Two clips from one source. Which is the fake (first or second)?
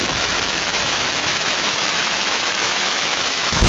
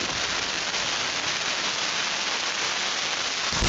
first